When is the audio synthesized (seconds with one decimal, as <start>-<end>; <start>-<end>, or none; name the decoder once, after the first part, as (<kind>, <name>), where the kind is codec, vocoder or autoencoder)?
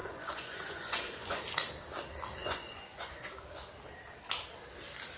0.0-1.4 (vocoder, Vocos); 2.4-3.3